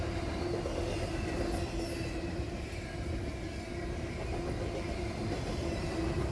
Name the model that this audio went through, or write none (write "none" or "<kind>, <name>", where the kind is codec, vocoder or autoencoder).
none